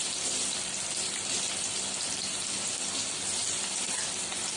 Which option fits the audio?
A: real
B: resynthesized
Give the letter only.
A